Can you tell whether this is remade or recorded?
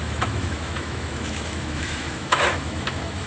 remade